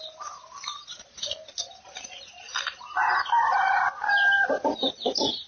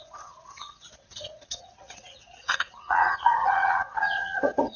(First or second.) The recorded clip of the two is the first